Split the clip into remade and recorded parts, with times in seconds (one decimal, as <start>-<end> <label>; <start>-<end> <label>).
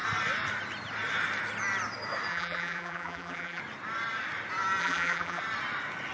0.0-2.3 recorded; 2.3-3.6 remade; 3.6-4.8 recorded; 4.8-5.4 remade; 5.4-6.1 recorded